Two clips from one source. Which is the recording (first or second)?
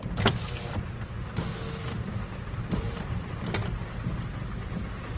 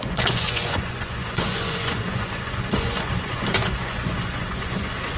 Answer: first